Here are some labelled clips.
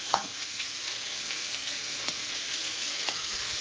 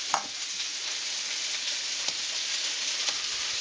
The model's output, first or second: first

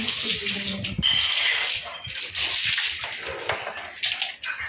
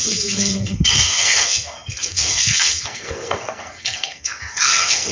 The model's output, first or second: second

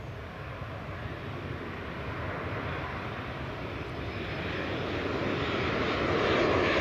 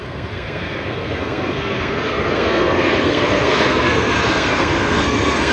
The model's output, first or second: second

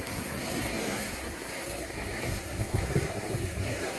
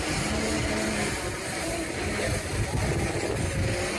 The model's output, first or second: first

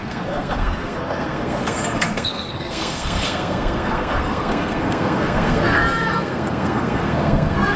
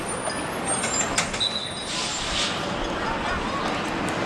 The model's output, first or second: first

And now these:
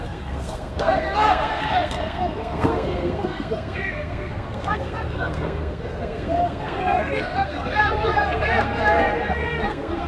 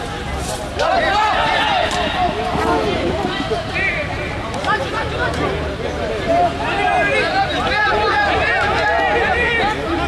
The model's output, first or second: first